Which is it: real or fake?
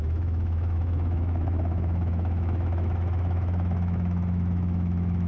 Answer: fake